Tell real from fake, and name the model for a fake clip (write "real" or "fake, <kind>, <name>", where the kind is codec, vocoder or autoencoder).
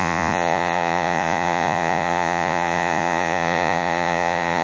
fake, vocoder, Vocos